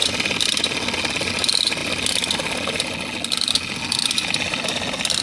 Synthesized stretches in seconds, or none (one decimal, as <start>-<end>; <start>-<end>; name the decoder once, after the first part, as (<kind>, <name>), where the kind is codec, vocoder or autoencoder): none